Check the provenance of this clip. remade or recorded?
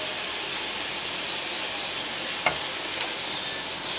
remade